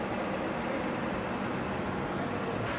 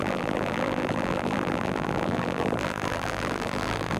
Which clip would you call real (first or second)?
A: first